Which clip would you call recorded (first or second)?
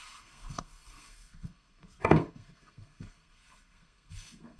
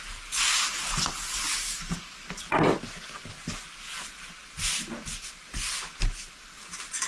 second